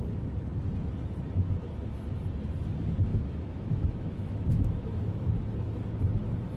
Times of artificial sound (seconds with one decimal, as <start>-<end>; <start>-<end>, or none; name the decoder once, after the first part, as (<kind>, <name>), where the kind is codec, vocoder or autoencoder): 3.1-5.3 (autoencoder, DAC-VAE)